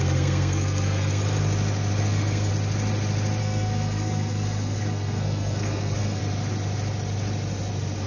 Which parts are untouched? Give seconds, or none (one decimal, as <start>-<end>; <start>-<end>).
1.2-2.0; 2.5-3.4; 6.2-8.1